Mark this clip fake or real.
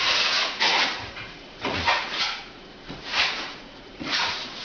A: fake